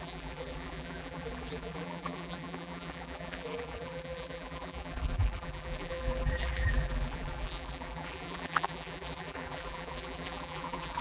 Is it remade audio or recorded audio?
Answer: remade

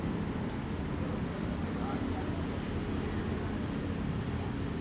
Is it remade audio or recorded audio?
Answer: recorded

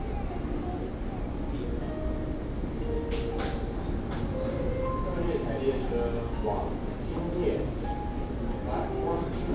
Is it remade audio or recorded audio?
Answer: recorded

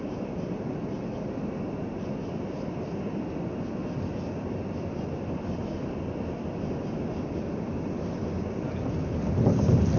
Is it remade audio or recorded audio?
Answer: recorded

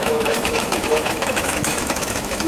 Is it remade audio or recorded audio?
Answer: remade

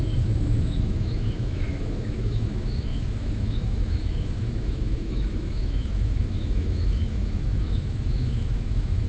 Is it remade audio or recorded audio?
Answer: remade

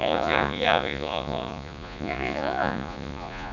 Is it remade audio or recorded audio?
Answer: remade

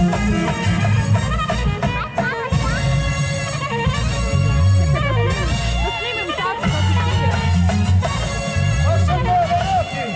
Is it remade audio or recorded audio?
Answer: recorded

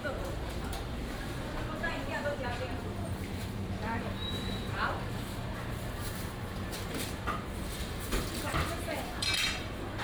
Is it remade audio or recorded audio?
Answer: remade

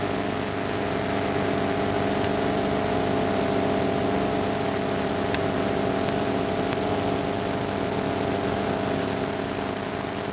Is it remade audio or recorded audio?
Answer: recorded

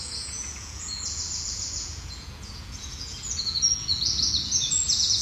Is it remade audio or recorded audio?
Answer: remade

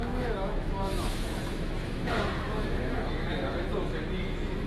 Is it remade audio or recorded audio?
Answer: remade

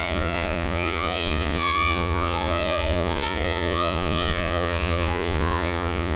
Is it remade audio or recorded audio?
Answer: remade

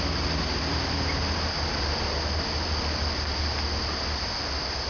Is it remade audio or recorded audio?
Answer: recorded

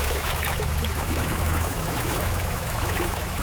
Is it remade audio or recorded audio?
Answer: remade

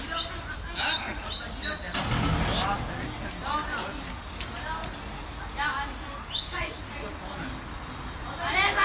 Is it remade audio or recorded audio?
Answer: recorded